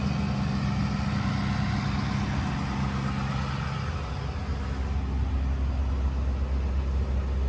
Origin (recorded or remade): recorded